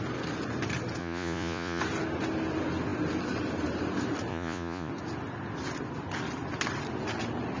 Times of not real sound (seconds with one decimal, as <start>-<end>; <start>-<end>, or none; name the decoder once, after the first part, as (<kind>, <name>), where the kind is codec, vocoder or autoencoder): 1.0-1.8 (vocoder, Vocos); 4.3-4.9

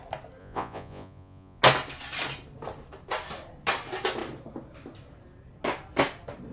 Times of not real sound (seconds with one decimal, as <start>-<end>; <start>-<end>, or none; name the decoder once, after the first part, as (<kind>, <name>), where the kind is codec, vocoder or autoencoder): 0.4-1.6 (vocoder, Vocos)

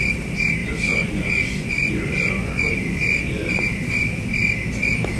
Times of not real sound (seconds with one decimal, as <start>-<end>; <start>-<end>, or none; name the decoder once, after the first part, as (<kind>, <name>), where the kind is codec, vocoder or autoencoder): 0.6-3.7 (vocoder, Vocos)

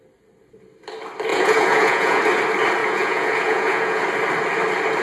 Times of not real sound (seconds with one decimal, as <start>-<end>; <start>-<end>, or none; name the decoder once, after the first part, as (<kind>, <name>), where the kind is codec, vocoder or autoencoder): 1.3-2.2 (vocoder, Vocos); 2.8-4.0

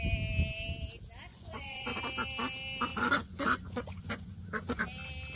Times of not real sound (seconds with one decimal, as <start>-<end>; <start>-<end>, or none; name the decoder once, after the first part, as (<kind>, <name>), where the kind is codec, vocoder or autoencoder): 1.3-2.0 (vocoder, Vocos); 2.9-4.8

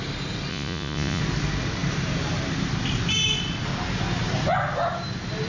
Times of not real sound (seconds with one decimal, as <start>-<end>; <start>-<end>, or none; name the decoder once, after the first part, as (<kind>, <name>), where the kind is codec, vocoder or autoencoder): 0.5-1.2 (vocoder, Vocos)

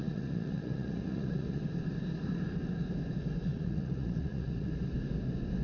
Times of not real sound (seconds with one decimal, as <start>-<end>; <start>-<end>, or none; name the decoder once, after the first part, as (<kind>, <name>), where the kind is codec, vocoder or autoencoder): 0.0-1.6 (vocoder, Vocos); 3.5-4.7